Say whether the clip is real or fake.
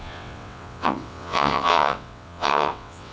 fake